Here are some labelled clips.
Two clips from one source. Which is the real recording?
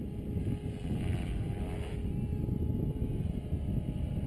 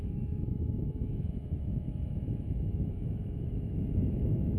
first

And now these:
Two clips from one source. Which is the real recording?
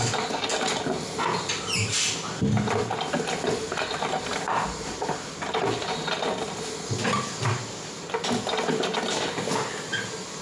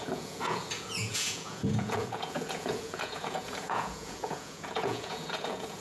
first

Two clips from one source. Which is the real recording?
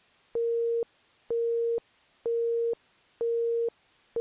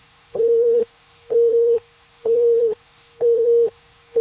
first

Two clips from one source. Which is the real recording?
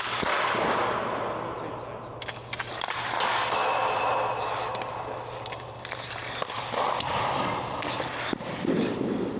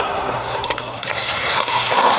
first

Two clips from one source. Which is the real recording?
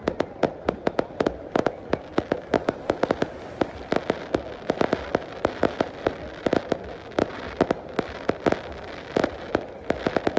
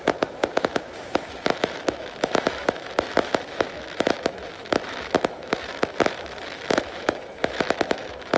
first